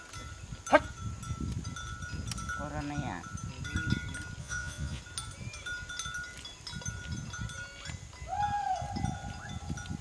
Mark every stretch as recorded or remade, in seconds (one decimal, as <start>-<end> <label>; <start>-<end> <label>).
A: 0.0-4.4 recorded; 4.4-5.0 remade; 5.0-10.0 recorded